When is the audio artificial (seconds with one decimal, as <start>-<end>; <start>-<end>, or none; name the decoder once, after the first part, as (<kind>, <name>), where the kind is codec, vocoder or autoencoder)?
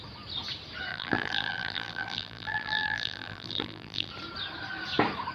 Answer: 0.9-4.1 (vocoder, BigVGAN v2)